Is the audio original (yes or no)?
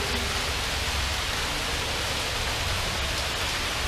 yes